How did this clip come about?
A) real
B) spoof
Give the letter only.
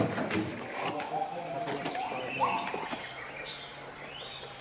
A